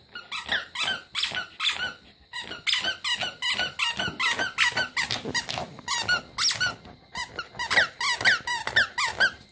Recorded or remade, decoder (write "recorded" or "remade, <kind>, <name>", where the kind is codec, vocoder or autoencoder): recorded